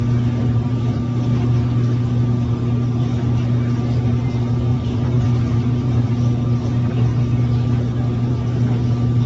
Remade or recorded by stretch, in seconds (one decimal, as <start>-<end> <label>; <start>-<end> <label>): 0.0-0.4 recorded; 0.4-1.0 remade; 1.0-4.7 recorded; 4.7-6.1 remade; 6.1-9.3 recorded